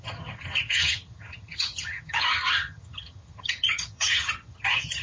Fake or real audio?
fake